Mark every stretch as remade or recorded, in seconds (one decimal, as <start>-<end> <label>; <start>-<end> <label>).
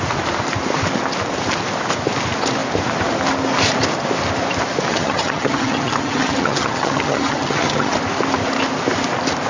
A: 0.0-4.9 recorded; 4.9-7.9 remade; 7.9-9.5 recorded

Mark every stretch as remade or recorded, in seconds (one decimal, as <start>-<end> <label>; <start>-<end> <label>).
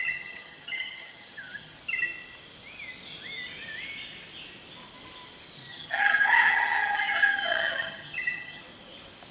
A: 0.0-1.8 remade; 1.8-5.7 recorded; 5.7-8.6 remade; 8.6-9.3 recorded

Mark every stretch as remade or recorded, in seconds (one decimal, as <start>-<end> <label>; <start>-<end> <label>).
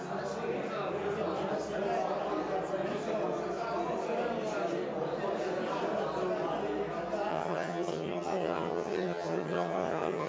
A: 0.0-7.3 recorded; 7.3-10.3 remade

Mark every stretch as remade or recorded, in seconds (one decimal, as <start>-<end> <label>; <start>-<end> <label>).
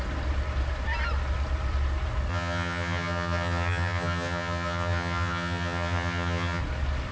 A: 0.0-2.3 recorded; 2.3-6.6 remade; 6.6-7.1 recorded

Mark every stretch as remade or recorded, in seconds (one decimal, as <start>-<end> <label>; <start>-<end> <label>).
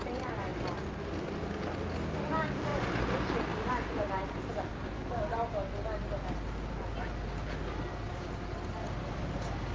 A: 0.0-9.7 recorded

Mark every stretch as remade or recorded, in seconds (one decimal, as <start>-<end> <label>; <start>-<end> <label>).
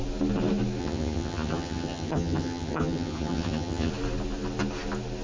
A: 0.0-0.8 recorded; 0.8-3.9 remade; 3.9-5.2 recorded